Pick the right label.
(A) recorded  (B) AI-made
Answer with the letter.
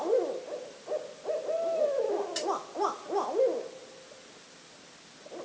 A